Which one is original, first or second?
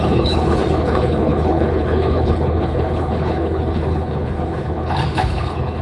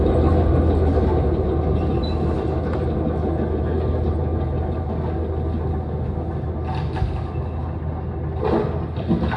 second